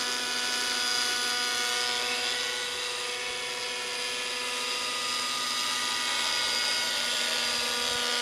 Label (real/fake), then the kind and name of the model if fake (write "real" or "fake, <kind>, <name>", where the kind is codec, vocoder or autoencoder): real